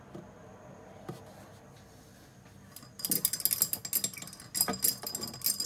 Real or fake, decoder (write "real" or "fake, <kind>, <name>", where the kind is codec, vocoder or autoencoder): real